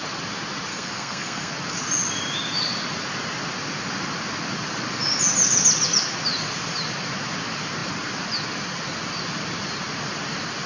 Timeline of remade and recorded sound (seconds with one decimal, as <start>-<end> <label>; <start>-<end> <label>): 0.0-0.7 recorded; 0.7-1.5 remade; 1.5-10.7 recorded